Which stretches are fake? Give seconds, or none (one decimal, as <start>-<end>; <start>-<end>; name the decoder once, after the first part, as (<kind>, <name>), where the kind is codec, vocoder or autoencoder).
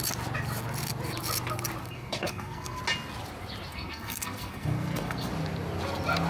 1.8-2.8 (codec, SNAC); 3.7-5.3